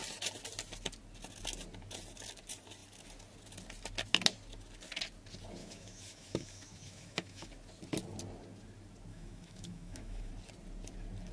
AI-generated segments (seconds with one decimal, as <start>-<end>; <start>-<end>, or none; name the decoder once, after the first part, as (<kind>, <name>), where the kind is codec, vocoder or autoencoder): 5.6-7.5 (autoencoder, DAC-VAE); 9.1-10.3